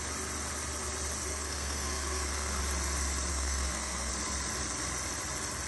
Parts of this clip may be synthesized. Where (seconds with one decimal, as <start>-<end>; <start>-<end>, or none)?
1.3-2.6; 3.3-4.1